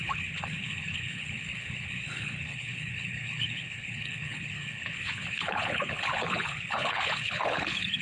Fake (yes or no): yes